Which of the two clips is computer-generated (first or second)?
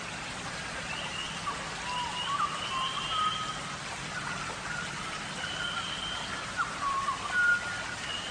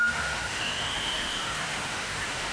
second